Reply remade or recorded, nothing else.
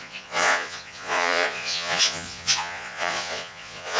remade